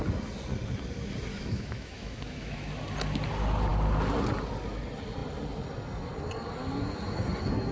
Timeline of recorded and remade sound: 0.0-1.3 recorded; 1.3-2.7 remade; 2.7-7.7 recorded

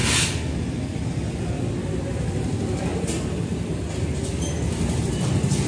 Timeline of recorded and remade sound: 0.0-5.7 recorded